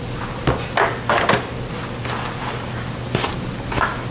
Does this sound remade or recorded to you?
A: recorded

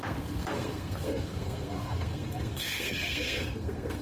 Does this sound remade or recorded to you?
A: remade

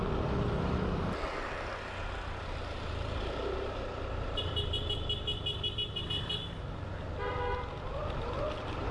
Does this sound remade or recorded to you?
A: recorded